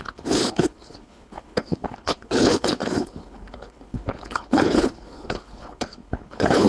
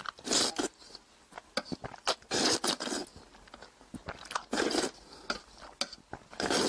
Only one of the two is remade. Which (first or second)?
first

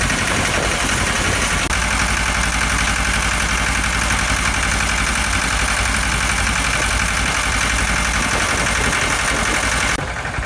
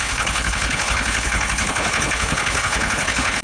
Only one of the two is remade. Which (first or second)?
second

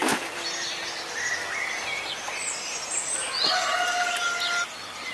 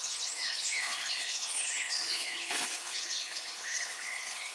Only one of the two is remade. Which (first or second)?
second